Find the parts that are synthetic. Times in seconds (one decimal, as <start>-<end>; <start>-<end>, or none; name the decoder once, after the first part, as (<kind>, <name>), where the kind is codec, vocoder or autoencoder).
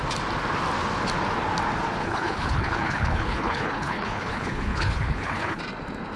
2.0-5.6 (codec, HILCodec)